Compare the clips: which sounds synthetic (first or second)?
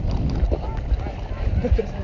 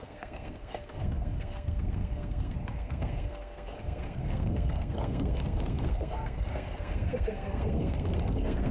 second